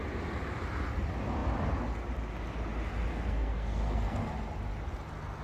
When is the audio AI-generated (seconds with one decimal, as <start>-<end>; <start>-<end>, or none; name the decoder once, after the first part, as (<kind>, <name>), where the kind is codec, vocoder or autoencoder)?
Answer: 3.1-4.3 (codec, SNAC)